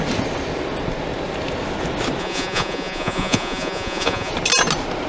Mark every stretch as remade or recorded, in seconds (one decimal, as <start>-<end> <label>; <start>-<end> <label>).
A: 0.0-2.2 recorded; 2.2-4.3 remade; 4.3-5.1 recorded